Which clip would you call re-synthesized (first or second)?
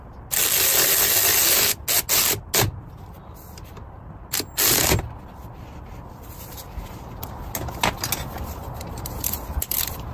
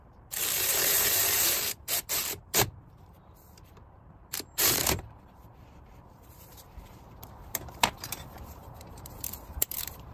second